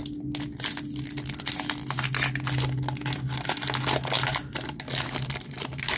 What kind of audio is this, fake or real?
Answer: real